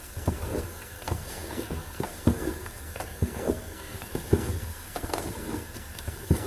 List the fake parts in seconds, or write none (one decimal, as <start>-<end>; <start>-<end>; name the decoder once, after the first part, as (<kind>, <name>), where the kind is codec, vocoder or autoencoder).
0.0-6.5 (codec, SNAC)